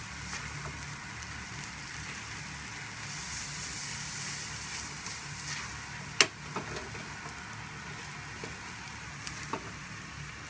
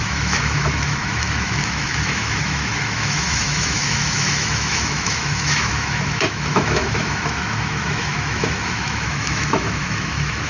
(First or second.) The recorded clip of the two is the first